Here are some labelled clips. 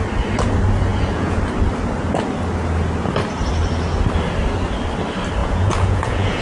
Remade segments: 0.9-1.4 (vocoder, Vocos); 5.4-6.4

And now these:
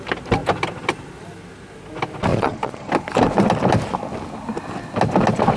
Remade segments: 2.3-2.9 (vocoder, Vocos)